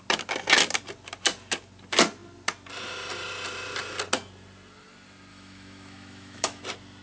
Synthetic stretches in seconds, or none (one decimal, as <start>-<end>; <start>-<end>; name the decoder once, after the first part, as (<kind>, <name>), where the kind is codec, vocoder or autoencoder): 5.3-6.6 (autoencoder, DAC-VAE)